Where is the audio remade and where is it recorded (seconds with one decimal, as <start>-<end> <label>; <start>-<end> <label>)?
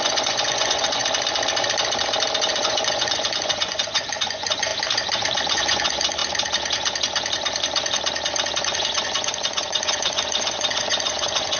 0.0-1.0 remade; 1.0-2.5 recorded; 2.5-4.7 remade; 4.7-5.5 recorded; 5.5-6.2 remade; 6.2-8.6 recorded; 8.6-11.6 remade